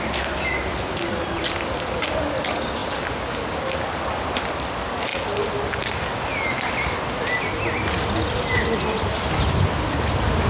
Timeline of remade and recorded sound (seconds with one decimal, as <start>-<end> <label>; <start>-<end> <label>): 0.0-2.8 remade; 2.8-3.8 recorded; 3.8-5.1 remade; 5.1-7.5 recorded; 7.5-10.5 remade